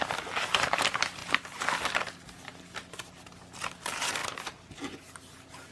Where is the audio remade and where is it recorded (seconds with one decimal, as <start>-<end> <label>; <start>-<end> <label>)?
0.0-5.7 recorded